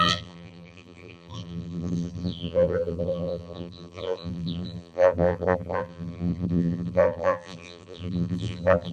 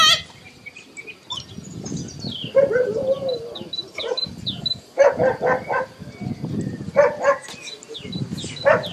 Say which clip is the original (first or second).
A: second